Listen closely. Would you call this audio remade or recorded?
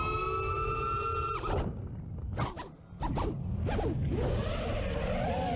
recorded